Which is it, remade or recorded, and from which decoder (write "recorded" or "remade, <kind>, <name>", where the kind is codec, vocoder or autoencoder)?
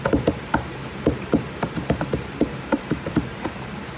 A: remade, vocoder, BigVGAN v2